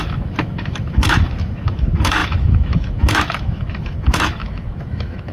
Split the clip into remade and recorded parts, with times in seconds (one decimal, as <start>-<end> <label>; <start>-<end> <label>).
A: 0.0-5.3 remade